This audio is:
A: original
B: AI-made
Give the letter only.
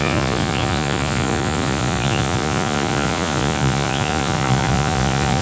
B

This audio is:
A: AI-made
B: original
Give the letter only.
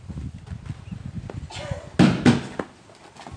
B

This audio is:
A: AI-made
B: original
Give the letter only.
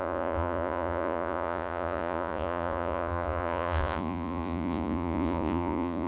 A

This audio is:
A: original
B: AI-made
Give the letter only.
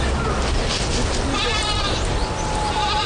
A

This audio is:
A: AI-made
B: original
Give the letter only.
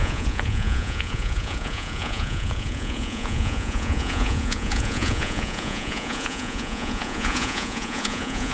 A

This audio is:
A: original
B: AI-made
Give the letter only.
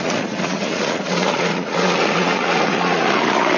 B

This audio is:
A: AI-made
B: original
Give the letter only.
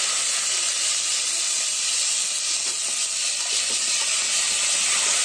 B